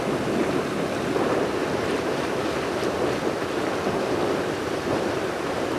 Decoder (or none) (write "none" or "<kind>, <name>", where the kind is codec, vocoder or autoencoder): none